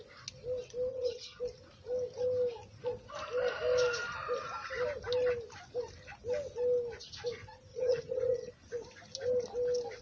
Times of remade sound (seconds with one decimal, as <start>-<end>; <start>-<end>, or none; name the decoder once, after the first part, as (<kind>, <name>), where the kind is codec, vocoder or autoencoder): 0.9-1.4 (vocoder, HiFi-GAN); 7.7-8.5